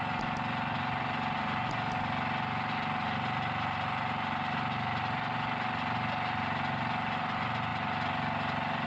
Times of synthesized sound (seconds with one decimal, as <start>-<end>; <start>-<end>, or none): none